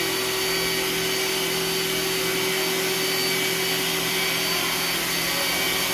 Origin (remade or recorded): recorded